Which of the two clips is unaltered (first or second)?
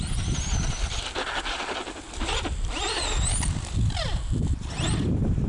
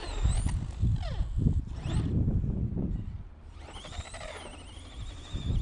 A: second